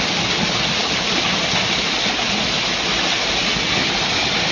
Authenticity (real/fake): real